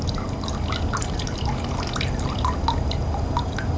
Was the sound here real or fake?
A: real